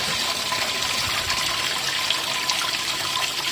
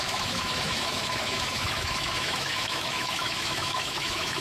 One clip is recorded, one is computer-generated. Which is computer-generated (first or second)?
second